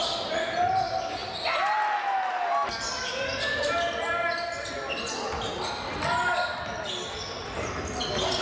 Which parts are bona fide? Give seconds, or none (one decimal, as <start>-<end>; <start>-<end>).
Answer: 0.0-8.4